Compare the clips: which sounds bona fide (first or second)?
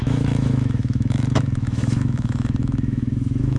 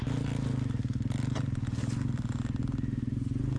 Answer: second